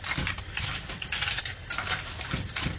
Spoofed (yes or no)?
no